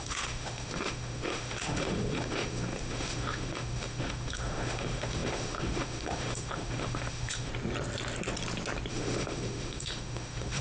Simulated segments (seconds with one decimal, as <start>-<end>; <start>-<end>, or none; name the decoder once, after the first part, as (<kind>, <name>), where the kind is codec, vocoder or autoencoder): 0.0-7.5 (autoencoder, DAC-VAE); 8.9-10.6